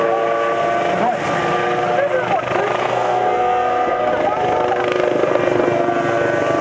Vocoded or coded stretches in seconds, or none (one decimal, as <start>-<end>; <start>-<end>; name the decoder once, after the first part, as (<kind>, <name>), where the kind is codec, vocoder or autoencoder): 2.8-4.1 (codec, SNAC)

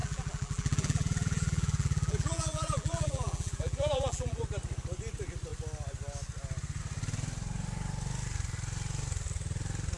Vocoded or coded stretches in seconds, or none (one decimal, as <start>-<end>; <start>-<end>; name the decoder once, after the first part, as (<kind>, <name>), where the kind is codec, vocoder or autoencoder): 0.0-4.4 (vocoder, BigVGAN v2)